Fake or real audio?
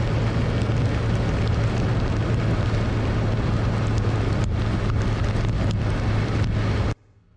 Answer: real